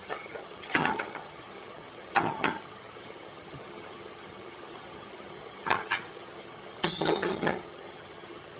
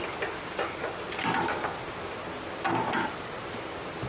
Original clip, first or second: second